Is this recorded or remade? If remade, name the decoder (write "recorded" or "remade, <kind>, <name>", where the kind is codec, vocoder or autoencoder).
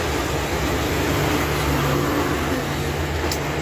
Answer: recorded